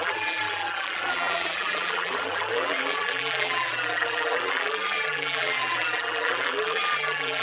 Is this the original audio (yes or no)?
no